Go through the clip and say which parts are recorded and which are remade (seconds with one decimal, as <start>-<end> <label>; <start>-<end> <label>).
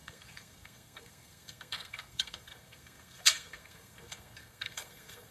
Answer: 0.0-5.3 remade